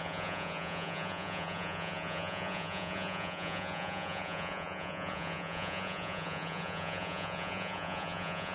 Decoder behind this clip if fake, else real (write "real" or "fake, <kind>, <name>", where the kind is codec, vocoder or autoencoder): fake, vocoder, Vocos